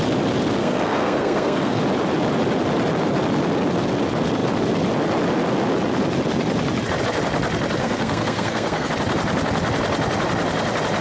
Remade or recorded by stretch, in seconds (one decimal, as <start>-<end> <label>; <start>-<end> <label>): 0.0-0.6 recorded; 0.6-1.8 remade; 1.8-7.8 recorded; 7.8-8.9 remade; 8.9-11.0 recorded